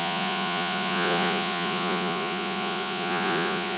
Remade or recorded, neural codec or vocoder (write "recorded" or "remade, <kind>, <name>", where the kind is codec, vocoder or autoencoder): remade, vocoder, Vocos